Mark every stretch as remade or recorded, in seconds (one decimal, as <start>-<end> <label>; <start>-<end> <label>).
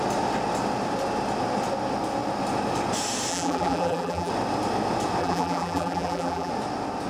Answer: 0.0-3.3 recorded; 3.3-4.3 remade; 4.3-5.2 recorded; 5.2-6.5 remade; 6.5-7.1 recorded